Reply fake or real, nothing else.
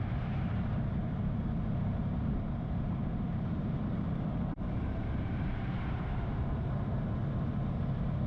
fake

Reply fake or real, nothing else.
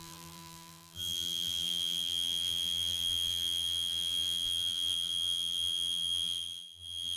fake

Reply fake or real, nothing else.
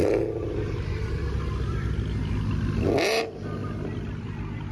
real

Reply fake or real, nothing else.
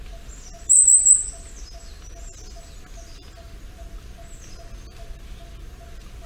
real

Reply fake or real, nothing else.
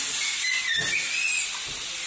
real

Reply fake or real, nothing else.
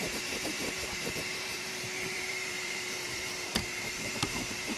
fake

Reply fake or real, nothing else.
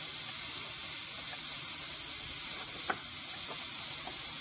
real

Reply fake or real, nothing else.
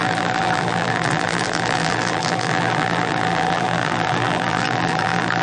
fake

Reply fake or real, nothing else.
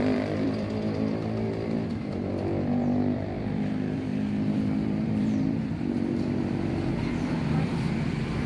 fake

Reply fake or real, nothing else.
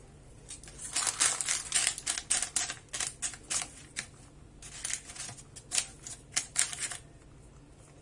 real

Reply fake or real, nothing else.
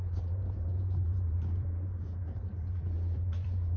fake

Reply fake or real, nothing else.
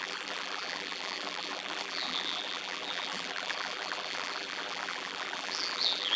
fake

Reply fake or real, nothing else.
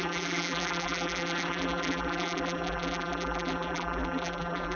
fake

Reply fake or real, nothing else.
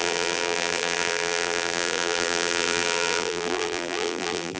fake